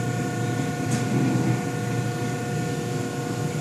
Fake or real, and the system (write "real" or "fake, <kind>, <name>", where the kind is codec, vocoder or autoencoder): real